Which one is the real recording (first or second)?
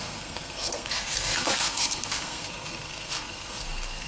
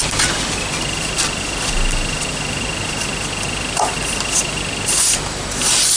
second